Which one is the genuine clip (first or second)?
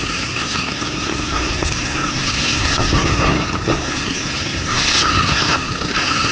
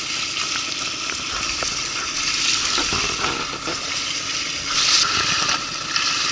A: second